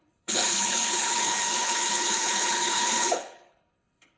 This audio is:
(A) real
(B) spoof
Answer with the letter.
B